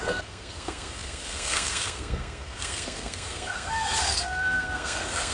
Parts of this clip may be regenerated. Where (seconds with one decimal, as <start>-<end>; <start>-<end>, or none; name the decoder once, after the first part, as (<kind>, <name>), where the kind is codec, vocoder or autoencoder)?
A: 0.0-5.3 (codec, SNAC)